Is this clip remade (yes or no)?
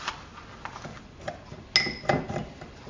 no